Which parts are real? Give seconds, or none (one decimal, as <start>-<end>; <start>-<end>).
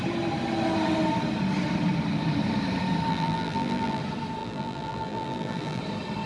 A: 0.0-3.1; 4.0-4.4; 5.8-6.3